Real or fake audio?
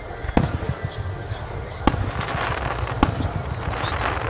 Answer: real